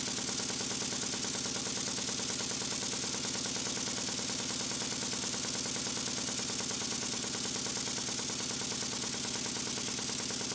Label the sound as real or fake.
real